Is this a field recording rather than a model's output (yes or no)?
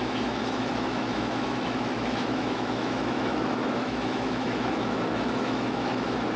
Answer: no